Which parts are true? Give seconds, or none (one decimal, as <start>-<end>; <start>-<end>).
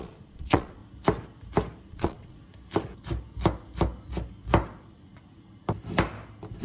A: 0.8-1.9; 2.4-6.6